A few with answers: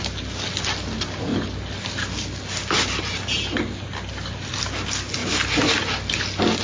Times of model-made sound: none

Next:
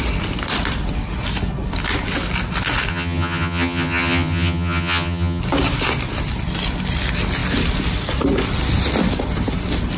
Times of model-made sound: 2.9-5.4

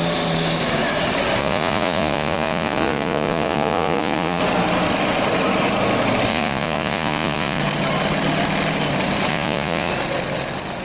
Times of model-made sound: 1.4-4.4; 6.3-7.6; 9.3-9.9

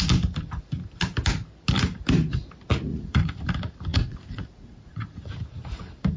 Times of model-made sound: 2.9-3.4; 3.9-5.3

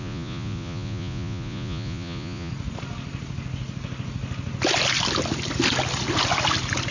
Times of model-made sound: 0.0-2.5

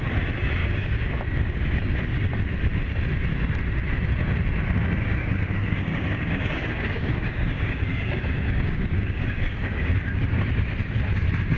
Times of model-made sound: 0.6-1.2; 5.2-9.9